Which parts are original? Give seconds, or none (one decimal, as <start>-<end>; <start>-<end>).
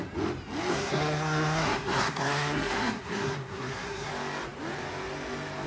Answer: 0.0-0.7; 4.1-5.7